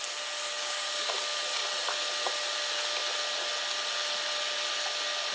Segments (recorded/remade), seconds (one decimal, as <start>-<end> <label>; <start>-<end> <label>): 0.0-0.5 recorded; 0.5-1.1 remade; 1.1-5.3 recorded